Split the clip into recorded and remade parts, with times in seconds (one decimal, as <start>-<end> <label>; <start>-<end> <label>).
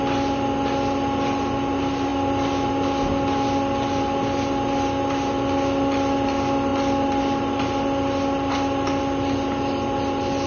0.0-10.5 recorded